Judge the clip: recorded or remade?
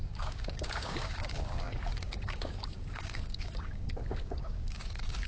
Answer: remade